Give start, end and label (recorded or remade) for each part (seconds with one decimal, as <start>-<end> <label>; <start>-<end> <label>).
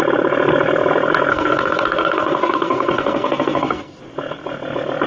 0.0-1.3 recorded; 1.3-4.0 remade; 4.0-5.1 recorded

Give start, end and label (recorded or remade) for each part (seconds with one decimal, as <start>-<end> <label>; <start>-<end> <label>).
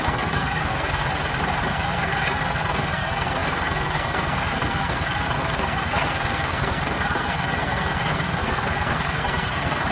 0.0-1.0 remade; 1.0-1.7 recorded; 1.7-9.9 remade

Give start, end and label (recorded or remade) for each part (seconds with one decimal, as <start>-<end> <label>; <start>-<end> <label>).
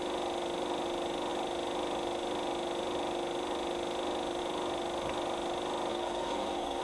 0.0-5.9 recorded; 5.9-6.8 remade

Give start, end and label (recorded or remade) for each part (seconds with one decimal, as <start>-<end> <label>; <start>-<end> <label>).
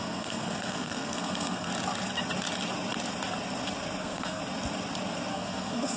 0.0-1.7 remade; 1.7-4.0 recorded; 4.0-4.4 remade; 4.4-5.3 recorded; 5.3-6.0 remade